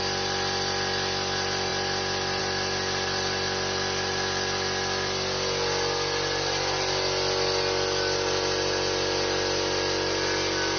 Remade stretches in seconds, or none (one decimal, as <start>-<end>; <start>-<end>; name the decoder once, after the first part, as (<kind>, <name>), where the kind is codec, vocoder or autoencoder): none